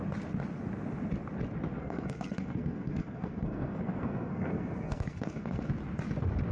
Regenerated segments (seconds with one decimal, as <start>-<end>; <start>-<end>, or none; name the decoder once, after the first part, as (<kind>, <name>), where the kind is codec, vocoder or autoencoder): 1.8-5.7 (codec, SNAC)